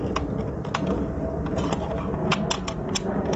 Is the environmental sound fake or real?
real